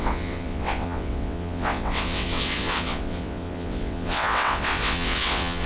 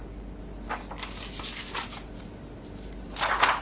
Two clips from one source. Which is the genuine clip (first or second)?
second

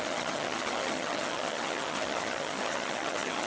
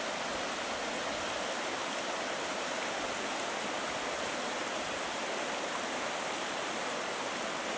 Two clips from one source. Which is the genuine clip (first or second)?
second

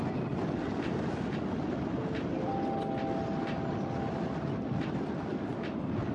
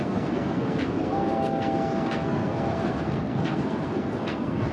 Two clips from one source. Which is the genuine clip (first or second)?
first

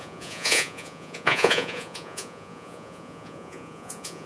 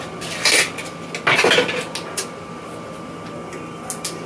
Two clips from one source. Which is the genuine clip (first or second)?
second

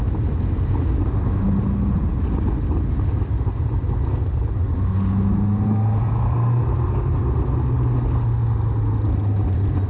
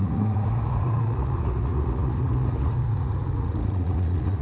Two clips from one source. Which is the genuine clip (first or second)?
first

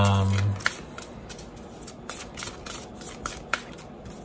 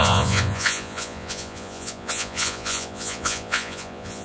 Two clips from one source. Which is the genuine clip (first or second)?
first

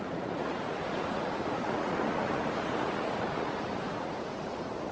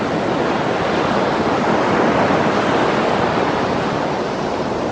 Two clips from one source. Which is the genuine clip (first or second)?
second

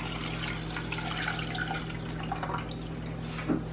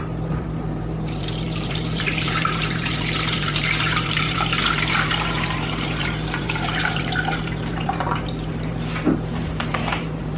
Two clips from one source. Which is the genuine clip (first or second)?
first